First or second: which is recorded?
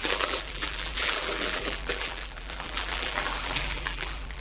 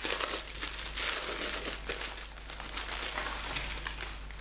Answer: second